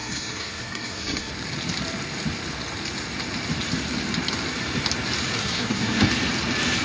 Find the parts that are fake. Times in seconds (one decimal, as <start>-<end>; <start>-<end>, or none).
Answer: 0.0-1.3; 5.4-6.1